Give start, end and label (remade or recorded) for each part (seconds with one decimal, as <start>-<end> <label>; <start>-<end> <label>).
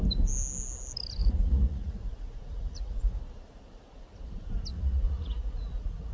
0.0-1.2 recorded; 1.2-3.2 remade; 3.2-4.7 recorded; 4.7-6.1 remade